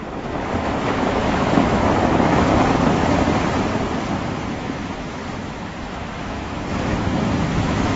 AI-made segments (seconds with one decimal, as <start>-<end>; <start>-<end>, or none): 0.0-2.5; 4.5-5.2; 5.9-8.0